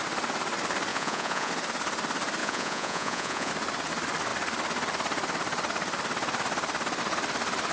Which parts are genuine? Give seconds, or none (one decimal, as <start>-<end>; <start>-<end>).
0.0-0.9; 1.5-2.4; 3.5-7.7